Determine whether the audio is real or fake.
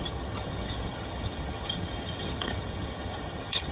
fake